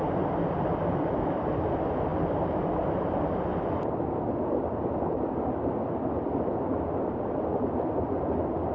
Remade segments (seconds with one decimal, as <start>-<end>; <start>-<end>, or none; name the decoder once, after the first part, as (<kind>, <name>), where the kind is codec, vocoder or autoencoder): none